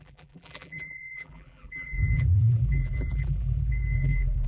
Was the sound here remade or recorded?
remade